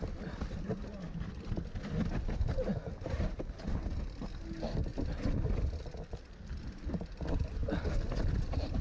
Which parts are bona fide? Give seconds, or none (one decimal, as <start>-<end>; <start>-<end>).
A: 0.0-8.8